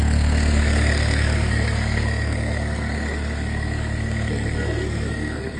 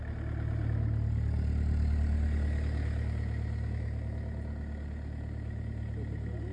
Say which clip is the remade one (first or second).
first